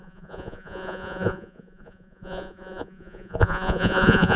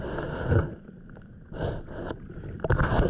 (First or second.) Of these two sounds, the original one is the second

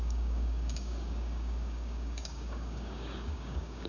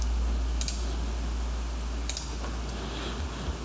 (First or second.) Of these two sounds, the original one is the second